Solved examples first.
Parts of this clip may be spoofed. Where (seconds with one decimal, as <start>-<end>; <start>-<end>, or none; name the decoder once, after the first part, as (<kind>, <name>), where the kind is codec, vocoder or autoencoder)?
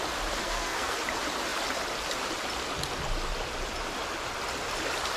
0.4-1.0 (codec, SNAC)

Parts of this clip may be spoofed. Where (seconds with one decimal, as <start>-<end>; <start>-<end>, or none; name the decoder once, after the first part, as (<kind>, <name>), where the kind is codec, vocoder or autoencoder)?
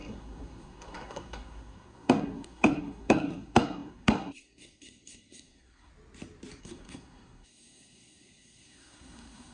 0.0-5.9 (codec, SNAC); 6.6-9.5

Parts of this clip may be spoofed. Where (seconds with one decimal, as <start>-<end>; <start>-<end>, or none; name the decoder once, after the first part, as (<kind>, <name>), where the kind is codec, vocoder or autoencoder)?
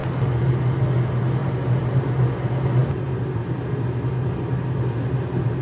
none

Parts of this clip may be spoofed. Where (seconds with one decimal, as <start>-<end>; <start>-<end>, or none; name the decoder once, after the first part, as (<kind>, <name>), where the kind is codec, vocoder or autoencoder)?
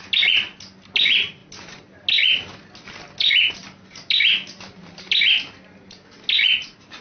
none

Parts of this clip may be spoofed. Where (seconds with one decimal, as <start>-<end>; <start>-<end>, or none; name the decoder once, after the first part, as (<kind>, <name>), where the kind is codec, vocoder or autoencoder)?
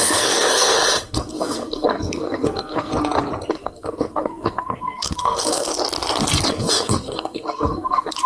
0.0-2.9 (codec, SNAC); 3.5-5.7; 6.5-8.3